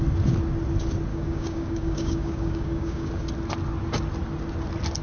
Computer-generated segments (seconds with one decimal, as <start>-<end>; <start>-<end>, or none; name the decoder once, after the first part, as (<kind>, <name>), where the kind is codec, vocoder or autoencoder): 1.1-3.1 (codec, DAC)